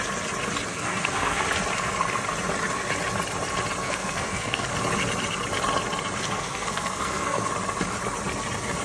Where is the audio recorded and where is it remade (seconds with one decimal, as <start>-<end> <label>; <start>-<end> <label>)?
0.0-0.7 recorded; 0.7-1.4 remade; 1.4-3.8 recorded; 3.8-4.7 remade; 4.7-6.2 recorded; 6.2-7.5 remade; 7.5-8.8 recorded